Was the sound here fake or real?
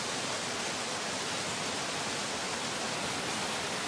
real